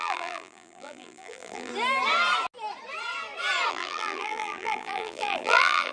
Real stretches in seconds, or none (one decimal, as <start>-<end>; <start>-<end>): 1.7-3.7